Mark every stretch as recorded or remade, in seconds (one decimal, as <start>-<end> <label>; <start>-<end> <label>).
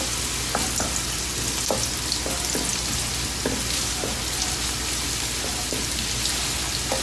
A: 0.0-7.0 recorded